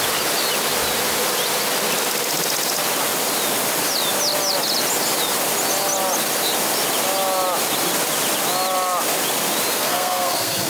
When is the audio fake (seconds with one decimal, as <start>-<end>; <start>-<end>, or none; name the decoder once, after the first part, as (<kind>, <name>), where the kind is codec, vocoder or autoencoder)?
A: 9.7-10.7 (codec, SNAC)